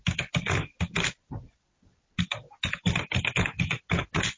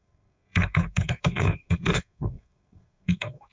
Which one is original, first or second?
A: first